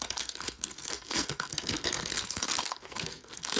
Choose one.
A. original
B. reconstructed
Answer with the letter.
B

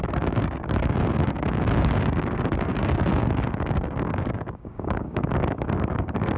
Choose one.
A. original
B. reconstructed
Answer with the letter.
B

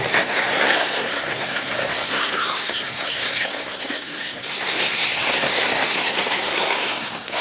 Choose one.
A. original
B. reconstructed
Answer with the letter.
B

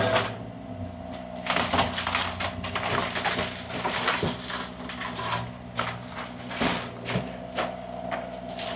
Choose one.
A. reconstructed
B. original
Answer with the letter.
B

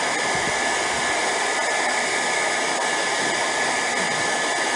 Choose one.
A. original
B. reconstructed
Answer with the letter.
A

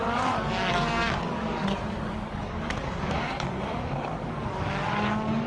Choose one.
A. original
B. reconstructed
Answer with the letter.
B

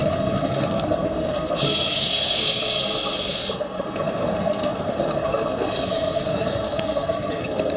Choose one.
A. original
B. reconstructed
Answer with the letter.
B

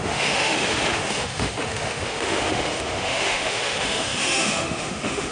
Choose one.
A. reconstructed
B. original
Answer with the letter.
A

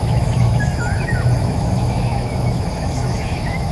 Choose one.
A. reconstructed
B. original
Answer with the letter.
A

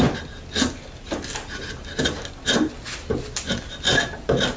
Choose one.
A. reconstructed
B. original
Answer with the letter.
B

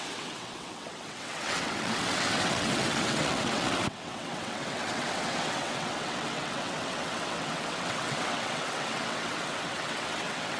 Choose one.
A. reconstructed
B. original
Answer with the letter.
A